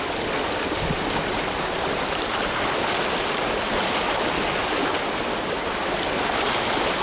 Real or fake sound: real